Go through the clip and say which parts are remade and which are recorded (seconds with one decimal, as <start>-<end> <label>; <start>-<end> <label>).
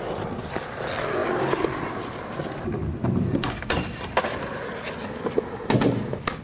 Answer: 0.0-6.4 recorded